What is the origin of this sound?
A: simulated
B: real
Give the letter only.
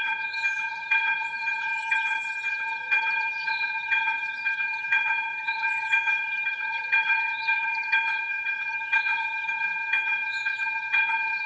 A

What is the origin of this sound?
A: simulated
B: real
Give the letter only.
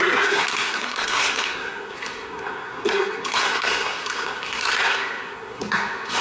A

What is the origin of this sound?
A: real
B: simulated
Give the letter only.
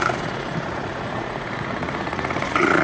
B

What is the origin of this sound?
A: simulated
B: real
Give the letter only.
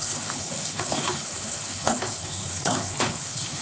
A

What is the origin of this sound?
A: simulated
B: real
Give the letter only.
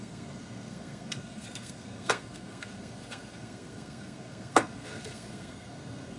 A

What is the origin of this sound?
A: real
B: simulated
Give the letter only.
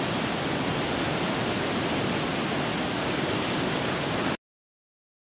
A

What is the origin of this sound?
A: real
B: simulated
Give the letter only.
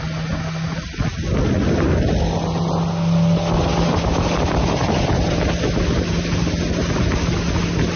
A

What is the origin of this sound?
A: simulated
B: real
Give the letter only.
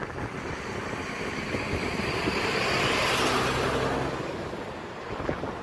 B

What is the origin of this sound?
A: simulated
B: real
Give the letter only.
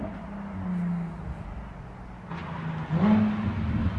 B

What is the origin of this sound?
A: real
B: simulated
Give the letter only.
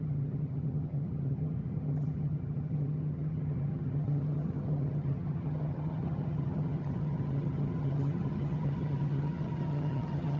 B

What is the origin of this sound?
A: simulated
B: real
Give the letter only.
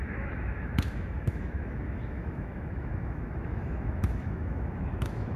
A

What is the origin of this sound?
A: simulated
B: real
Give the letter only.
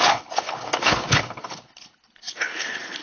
A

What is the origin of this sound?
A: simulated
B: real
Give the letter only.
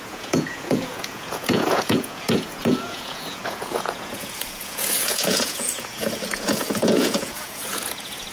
A